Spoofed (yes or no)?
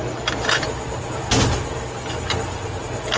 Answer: no